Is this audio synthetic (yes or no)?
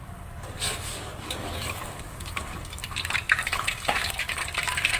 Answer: yes